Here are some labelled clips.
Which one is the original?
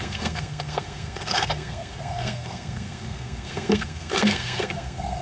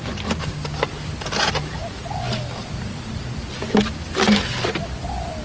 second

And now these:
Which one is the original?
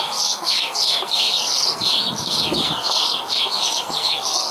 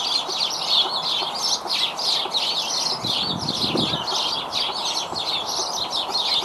second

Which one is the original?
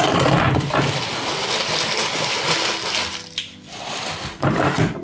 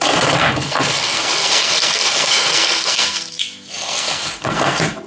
first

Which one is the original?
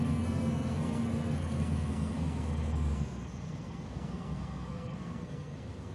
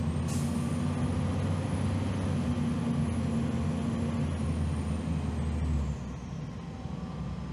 second